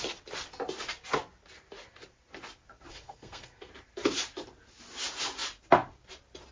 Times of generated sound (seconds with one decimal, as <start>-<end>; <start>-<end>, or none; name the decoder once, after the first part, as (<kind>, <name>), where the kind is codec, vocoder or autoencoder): 2.9-3.7 (codec, SNAC)